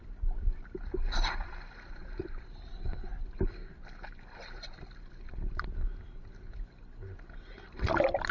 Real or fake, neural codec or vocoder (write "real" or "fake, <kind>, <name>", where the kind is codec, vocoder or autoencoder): real